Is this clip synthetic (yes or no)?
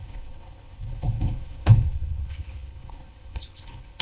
yes